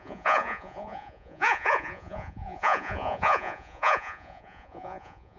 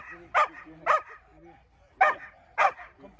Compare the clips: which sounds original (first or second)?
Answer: second